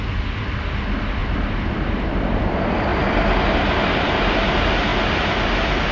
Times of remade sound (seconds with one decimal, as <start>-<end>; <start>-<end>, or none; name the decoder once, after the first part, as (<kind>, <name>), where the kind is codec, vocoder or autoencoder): 1.2-2.5 (vocoder, BigVGAN v2); 2.9-4.1